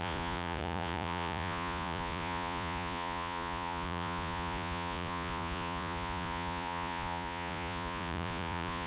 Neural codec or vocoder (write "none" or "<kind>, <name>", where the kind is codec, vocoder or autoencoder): vocoder, Vocos